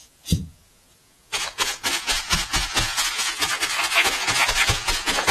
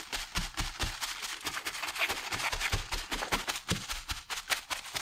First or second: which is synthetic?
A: first